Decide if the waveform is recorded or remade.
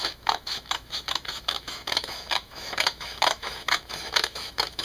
remade